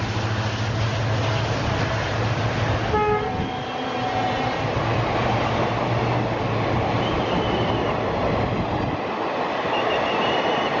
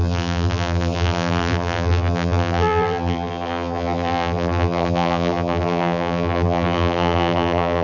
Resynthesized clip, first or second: second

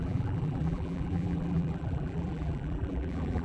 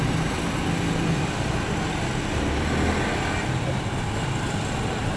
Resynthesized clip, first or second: first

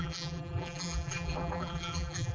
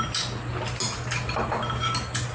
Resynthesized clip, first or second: first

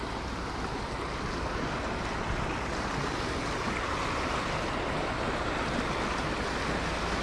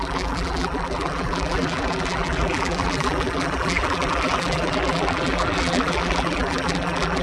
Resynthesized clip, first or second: second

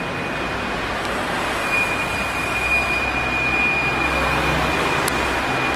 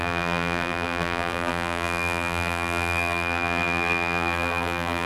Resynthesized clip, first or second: second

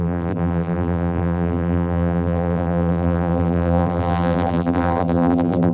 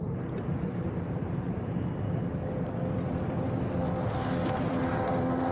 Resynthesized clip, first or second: first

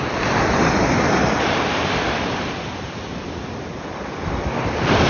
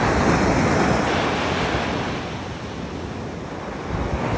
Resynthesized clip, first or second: first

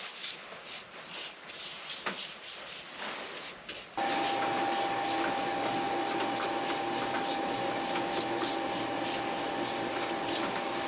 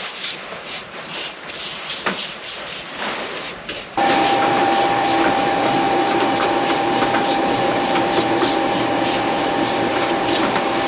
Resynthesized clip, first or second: second